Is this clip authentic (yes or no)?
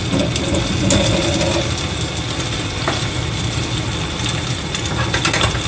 yes